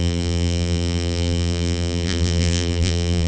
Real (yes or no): no